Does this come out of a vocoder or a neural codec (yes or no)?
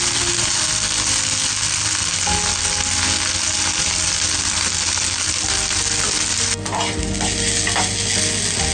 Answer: no